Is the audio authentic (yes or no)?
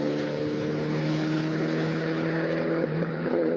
no